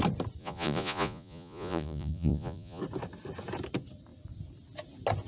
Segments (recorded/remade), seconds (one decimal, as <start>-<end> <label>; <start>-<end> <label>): 0.0-0.4 recorded; 0.4-2.8 remade; 2.8-5.3 recorded